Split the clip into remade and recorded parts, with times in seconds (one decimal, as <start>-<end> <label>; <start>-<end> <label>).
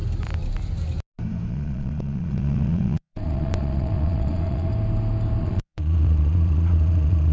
0.0-1.5 recorded; 1.5-4.7 remade; 4.7-5.4 recorded; 5.4-7.3 remade